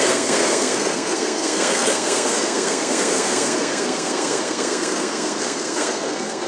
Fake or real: fake